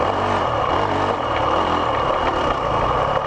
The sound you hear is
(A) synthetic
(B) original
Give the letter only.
B